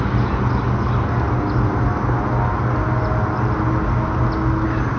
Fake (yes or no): no